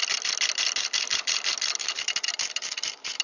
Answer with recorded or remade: recorded